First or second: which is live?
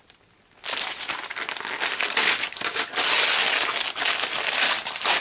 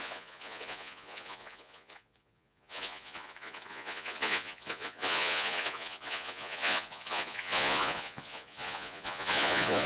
first